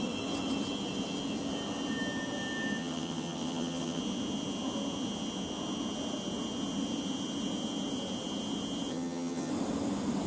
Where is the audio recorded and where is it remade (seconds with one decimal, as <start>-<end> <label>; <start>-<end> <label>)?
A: 0.0-2.8 recorded; 2.8-4.0 remade; 4.0-8.9 recorded; 8.9-9.5 remade; 9.5-10.3 recorded

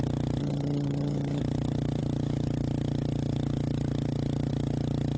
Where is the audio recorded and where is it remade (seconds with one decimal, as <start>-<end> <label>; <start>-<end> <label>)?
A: 0.0-0.4 recorded; 0.4-1.4 remade; 1.4-5.2 recorded